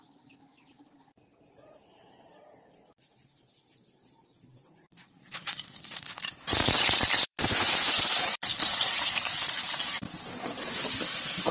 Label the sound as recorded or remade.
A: remade